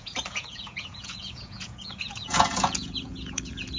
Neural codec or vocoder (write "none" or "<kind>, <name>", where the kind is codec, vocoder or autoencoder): vocoder, Vocos